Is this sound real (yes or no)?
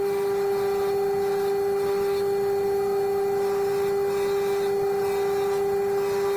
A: yes